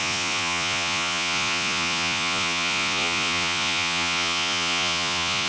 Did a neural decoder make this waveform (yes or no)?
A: yes